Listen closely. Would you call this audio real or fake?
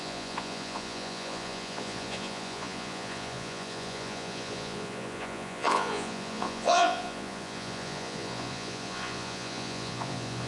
fake